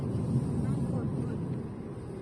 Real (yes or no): yes